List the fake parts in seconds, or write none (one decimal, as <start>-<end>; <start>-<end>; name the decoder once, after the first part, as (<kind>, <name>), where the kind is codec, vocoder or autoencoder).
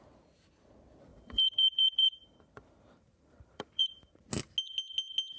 1.1-4.2 (vocoder, BigVGAN v2)